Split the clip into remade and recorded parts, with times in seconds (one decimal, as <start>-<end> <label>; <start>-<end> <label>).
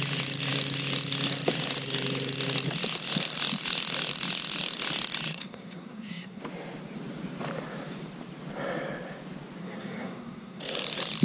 0.0-5.3 recorded; 5.3-6.4 remade; 6.4-9.6 recorded; 9.6-10.6 remade; 10.6-11.2 recorded